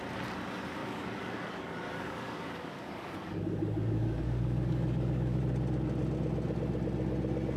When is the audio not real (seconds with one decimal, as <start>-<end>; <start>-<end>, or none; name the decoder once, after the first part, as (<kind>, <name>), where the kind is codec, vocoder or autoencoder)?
0.8-5.4 (codec, DAC)